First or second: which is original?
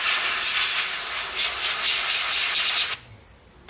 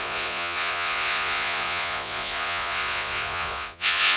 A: first